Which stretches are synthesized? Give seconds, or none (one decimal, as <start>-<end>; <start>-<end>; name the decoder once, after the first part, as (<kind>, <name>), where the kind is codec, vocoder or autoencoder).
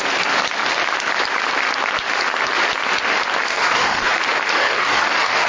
3.5-4.1 (codec, DAC); 4.5-5.5